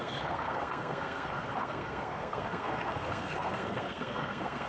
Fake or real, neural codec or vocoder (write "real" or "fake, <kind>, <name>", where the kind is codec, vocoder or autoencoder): fake, codec, SNAC